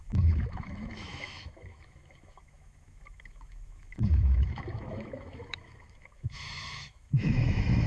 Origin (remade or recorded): remade